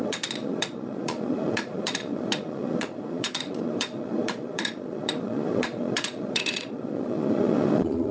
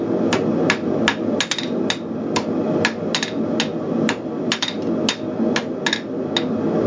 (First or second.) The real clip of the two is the second